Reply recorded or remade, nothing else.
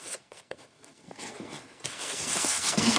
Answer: remade